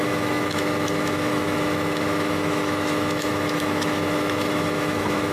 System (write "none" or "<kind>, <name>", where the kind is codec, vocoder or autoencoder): autoencoder, DAC-VAE